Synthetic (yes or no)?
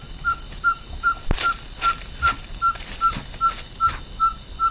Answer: no